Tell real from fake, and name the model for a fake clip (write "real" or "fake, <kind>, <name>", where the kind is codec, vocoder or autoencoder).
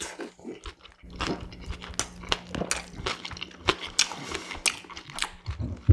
real